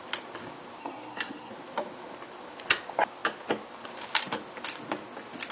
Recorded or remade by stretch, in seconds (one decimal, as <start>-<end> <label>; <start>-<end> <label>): 0.0-0.8 recorded; 0.8-1.5 remade; 1.5-5.5 recorded